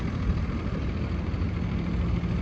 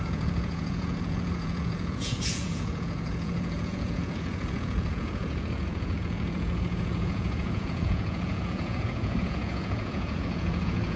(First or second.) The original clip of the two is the first